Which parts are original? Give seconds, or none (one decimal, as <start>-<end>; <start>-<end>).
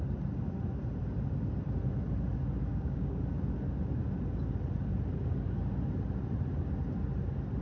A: 0.0-2.7; 3.2-7.6